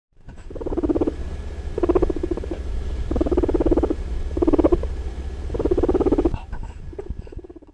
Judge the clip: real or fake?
fake